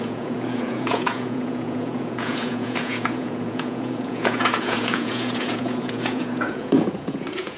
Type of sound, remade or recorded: remade